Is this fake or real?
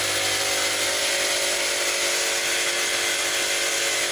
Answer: real